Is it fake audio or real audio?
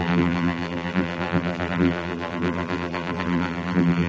fake